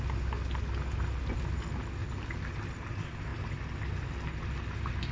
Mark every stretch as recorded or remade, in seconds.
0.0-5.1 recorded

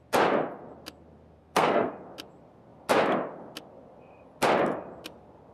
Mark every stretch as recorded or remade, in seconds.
0.0-1.4 recorded; 1.4-1.9 remade; 1.9-5.5 recorded

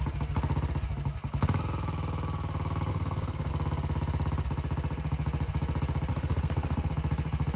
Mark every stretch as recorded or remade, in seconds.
0.0-2.9 recorded; 2.9-3.5 remade; 3.5-6.1 recorded; 6.1-6.9 remade; 6.9-7.6 recorded

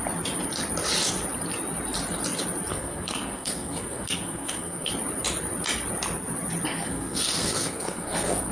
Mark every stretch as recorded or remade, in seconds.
0.0-2.7 recorded; 2.7-4.9 remade; 4.9-6.7 recorded; 6.7-8.5 remade

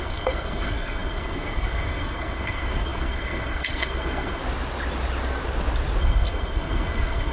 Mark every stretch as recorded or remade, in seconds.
0.0-4.4 remade; 4.4-6.0 recorded; 6.0-7.3 remade

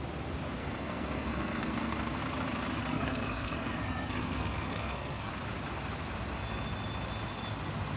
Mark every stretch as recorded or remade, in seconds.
0.0-0.6 recorded; 0.6-2.2 remade; 2.2-2.8 recorded; 2.8-5.3 remade; 5.3-8.0 recorded